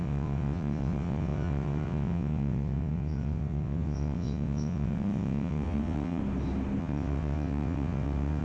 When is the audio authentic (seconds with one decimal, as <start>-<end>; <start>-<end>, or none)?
6.2-6.8